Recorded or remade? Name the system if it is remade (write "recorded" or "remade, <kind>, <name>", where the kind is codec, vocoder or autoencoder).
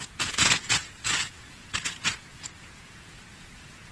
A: remade, vocoder, Vocos